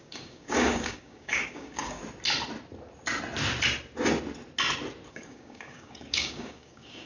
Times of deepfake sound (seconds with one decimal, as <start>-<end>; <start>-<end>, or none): 0.0-2.0; 5.1-7.1